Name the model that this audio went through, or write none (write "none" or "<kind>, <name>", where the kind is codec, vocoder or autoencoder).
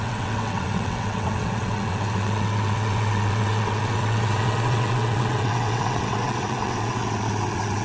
vocoder, WaveNeXt